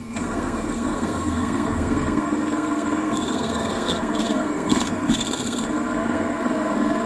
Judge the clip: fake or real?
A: fake